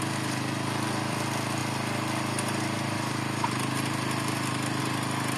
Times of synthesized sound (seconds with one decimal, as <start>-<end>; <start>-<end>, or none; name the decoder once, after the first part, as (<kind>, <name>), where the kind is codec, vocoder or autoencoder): none